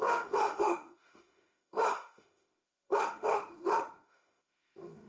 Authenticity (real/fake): fake